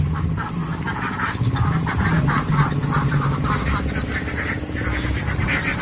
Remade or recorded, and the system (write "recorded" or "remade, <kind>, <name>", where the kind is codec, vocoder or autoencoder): recorded